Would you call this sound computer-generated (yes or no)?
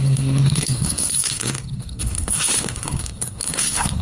yes